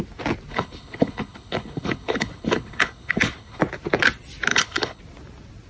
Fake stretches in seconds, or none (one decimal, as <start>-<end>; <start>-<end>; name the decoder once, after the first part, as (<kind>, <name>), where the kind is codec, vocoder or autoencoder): 0.5-3.6 (codec, HILCodec); 4.5-5.0